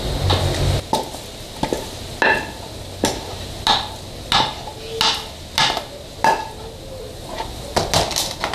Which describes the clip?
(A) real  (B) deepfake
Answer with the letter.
A